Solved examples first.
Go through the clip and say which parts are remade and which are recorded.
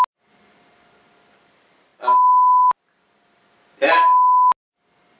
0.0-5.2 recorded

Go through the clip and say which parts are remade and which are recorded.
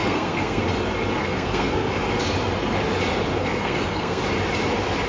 0.0-0.6 remade; 0.6-1.2 recorded; 1.2-1.9 remade; 1.9-3.4 recorded; 3.4-4.2 remade; 4.2-5.1 recorded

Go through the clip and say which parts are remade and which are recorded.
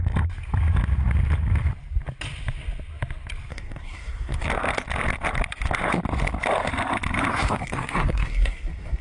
0.0-3.5 recorded; 3.5-4.5 remade; 4.5-7.3 recorded; 7.3-9.0 remade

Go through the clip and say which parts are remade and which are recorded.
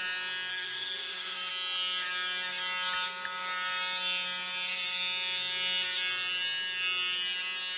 0.0-0.5 recorded; 0.5-1.5 remade; 1.5-7.8 recorded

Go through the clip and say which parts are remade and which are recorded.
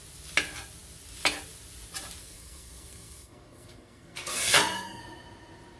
0.0-2.2 recorded; 2.2-5.0 remade; 5.0-5.8 recorded